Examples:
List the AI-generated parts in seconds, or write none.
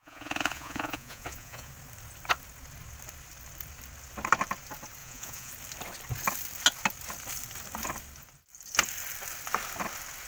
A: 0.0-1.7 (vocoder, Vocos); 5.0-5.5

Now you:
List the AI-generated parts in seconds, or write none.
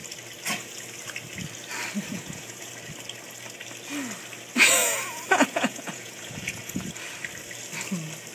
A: 2.1-2.7 (vocoder, Vocos); 4.8-6.9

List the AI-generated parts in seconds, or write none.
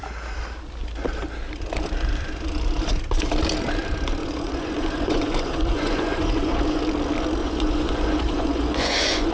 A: 4.2-6.8 (vocoder, Vocos); 7.4-9.3